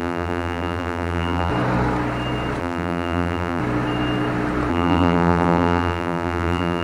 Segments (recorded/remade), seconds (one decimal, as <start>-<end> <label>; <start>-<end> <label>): 0.0-1.5 remade; 1.5-2.6 recorded; 2.6-3.6 remade; 3.6-4.7 recorded; 4.7-6.8 remade